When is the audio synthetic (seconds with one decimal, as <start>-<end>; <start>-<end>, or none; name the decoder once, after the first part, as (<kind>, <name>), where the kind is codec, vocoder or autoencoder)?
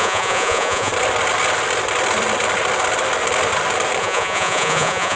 0.0-0.9 (vocoder, Vocos); 4.0-5.2